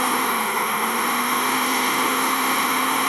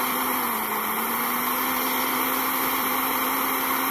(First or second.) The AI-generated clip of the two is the first